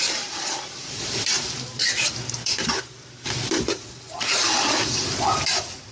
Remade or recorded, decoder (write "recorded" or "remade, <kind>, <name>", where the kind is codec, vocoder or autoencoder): remade, vocoder, BigVGAN v2